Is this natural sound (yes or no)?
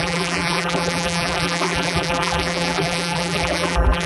no